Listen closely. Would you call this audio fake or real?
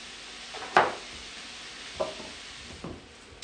real